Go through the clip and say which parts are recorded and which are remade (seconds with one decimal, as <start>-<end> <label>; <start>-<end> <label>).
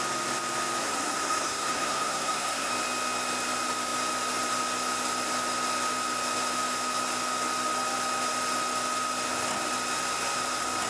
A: 0.0-0.8 recorded; 0.8-2.7 remade; 2.7-10.9 recorded